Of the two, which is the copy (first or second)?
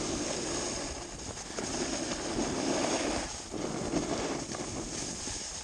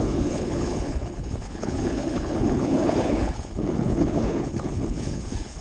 second